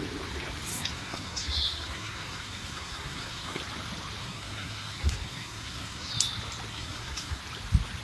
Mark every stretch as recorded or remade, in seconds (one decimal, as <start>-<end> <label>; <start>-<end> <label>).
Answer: 0.0-0.7 recorded; 0.7-3.6 remade; 3.6-4.2 recorded; 4.2-6.1 remade; 6.1-6.7 recorded; 6.7-7.4 remade; 7.4-8.0 recorded